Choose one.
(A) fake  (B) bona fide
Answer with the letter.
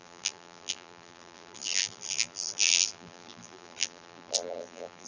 A